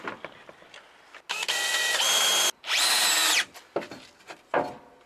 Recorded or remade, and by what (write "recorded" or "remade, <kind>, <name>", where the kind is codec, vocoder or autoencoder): recorded